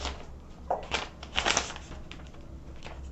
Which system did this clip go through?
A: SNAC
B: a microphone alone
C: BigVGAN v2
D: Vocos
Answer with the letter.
B